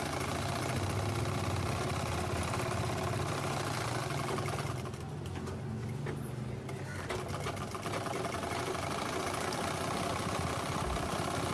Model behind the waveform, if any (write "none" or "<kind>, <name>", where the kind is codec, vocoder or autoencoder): none